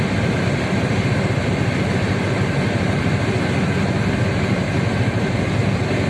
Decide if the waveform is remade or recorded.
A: recorded